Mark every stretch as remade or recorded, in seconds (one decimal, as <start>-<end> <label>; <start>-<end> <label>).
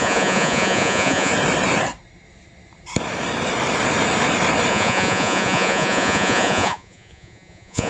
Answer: 0.0-1.3 remade; 1.3-4.7 recorded; 4.7-7.9 remade